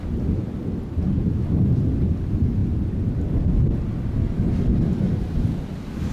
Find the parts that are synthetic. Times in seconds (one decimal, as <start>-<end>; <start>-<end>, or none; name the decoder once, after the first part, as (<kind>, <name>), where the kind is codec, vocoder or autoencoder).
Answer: none